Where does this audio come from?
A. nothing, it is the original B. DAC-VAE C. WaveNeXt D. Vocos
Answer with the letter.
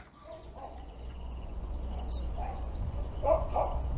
D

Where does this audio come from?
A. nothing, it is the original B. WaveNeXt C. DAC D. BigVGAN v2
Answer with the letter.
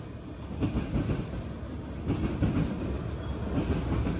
A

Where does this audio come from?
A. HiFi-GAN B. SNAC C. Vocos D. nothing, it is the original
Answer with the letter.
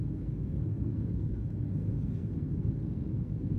B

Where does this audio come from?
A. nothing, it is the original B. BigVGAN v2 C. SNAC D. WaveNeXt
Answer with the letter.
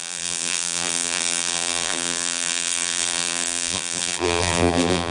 B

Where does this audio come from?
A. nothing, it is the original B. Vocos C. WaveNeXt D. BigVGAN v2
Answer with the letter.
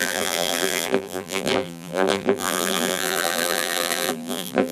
D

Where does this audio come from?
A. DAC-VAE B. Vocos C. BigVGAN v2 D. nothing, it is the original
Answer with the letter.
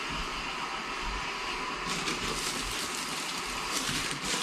D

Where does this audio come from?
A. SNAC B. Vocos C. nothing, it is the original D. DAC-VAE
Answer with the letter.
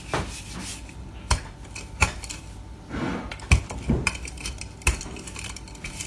C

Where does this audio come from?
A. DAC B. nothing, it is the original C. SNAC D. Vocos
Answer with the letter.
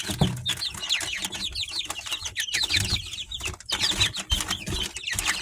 B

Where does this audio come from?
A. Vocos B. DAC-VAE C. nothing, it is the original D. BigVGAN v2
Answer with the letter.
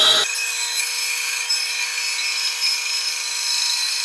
C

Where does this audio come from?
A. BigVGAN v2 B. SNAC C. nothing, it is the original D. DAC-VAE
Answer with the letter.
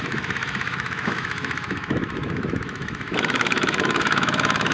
D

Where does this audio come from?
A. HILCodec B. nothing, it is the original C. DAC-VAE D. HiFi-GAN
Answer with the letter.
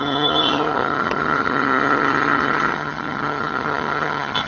D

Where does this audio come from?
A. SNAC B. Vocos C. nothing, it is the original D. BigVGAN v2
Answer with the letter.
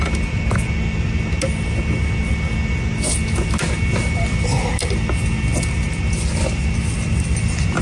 C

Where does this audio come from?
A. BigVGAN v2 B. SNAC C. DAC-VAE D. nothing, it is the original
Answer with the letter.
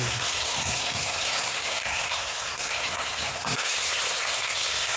B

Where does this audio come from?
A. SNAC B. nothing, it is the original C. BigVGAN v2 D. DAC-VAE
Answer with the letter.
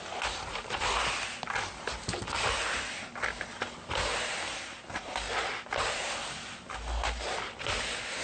B